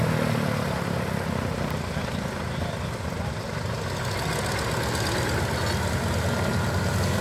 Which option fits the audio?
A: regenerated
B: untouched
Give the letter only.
B